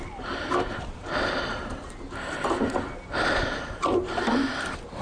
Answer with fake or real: real